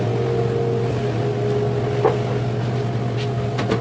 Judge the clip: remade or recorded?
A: recorded